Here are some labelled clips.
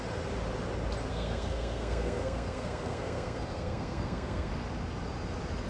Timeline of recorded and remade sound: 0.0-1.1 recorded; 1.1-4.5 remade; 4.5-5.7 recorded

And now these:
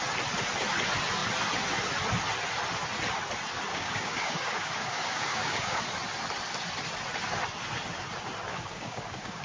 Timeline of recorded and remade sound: 0.0-3.7 recorded; 3.7-5.8 remade; 5.8-8.5 recorded; 8.5-9.4 remade

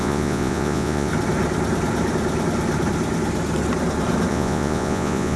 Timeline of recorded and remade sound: 0.0-1.1 remade; 1.1-4.3 recorded; 4.3-5.4 remade

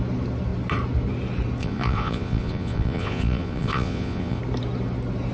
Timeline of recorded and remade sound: 0.0-1.6 recorded; 1.6-4.4 remade; 4.4-5.3 recorded